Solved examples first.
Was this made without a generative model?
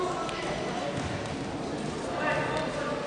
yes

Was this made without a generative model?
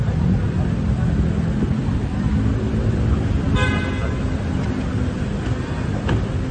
yes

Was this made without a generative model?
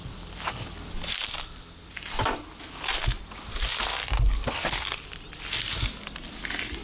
yes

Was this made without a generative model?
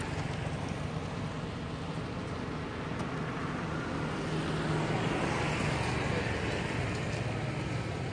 yes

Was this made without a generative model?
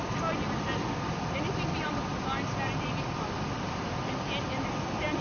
yes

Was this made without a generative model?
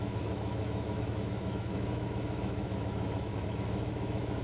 no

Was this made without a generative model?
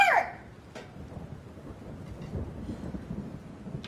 yes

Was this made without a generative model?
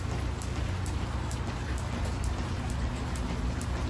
yes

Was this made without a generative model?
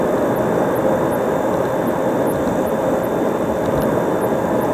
yes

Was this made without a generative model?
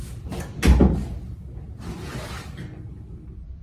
yes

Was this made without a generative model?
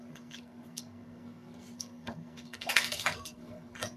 no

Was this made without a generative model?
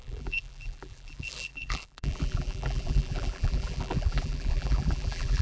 no